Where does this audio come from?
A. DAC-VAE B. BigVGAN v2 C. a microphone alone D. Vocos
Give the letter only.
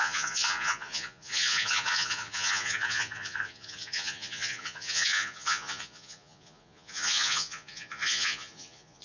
D